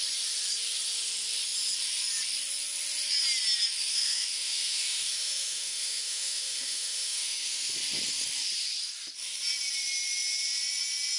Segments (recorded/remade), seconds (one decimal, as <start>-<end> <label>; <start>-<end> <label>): 0.0-3.9 recorded; 3.9-7.7 remade; 7.7-11.2 recorded

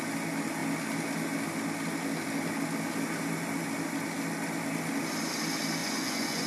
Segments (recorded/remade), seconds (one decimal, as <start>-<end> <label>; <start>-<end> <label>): 0.0-5.8 recorded; 5.8-6.5 remade